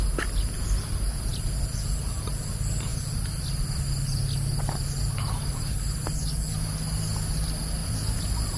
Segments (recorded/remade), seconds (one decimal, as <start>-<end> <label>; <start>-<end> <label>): 0.0-7.8 recorded; 7.8-8.6 remade